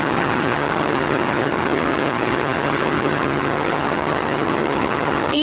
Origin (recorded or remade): remade